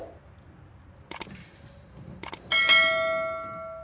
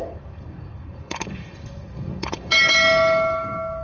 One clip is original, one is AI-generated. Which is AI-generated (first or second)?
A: second